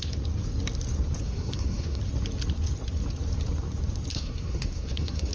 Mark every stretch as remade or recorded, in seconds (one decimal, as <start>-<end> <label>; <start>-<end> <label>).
0.0-1.2 recorded; 1.2-2.0 remade; 2.0-4.1 recorded; 4.1-5.3 remade

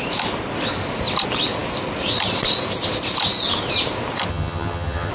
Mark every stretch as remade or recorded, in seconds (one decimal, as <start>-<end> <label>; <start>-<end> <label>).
0.0-4.3 recorded; 4.3-5.1 remade